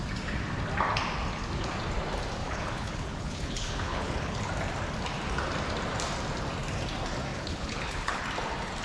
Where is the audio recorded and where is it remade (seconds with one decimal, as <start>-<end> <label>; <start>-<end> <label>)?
0.0-2.4 recorded; 2.4-4.4 remade; 4.4-7.3 recorded; 7.3-8.2 remade; 8.2-8.8 recorded